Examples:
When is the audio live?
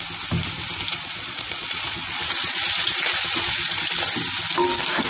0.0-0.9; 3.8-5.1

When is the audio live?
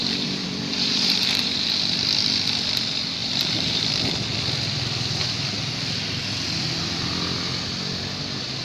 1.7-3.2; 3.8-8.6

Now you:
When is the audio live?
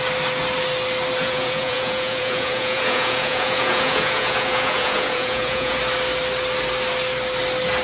0.0-1.2; 5.8-7.8